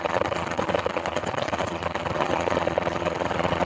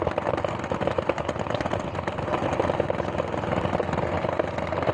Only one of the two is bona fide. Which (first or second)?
second